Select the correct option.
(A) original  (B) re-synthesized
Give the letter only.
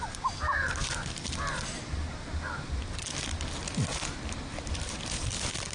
A